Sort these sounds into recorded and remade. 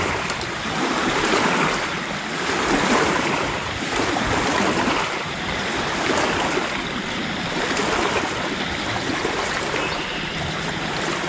remade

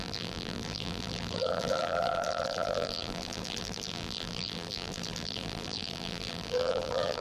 remade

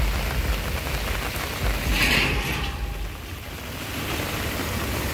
recorded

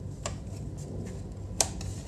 recorded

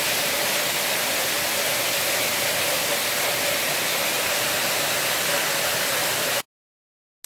recorded